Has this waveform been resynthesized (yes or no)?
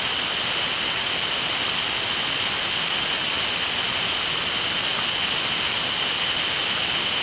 no